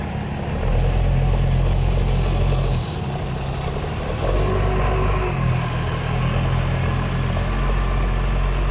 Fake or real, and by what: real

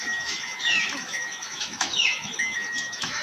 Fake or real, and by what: fake, autoencoder, DAC-VAE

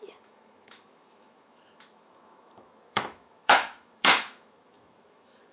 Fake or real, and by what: fake, autoencoder, DAC-VAE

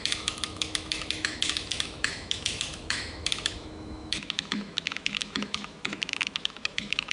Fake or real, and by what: fake, autoencoder, DAC-VAE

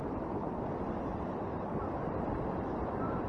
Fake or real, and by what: real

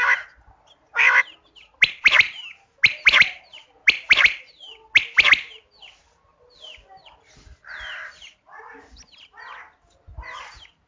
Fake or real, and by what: real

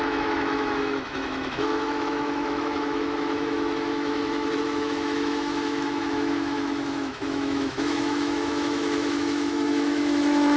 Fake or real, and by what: fake, autoencoder, DAC-VAE